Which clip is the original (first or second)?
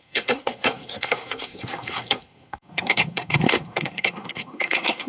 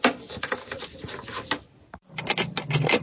second